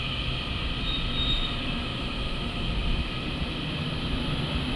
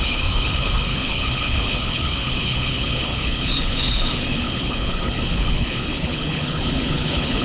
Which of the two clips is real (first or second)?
first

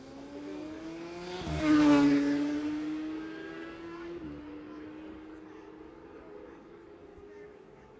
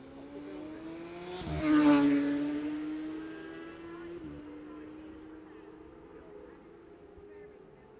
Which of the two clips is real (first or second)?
second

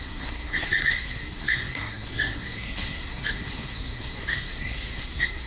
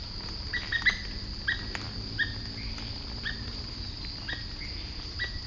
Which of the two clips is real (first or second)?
second